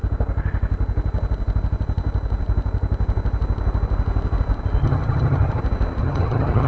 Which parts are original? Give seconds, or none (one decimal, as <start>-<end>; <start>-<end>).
0.0-4.8; 5.6-6.0